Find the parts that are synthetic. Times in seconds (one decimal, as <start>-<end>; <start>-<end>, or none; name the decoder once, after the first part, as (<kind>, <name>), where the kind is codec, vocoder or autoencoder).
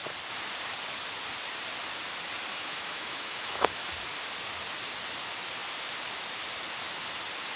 2.5-3.9 (autoencoder, DAC-VAE)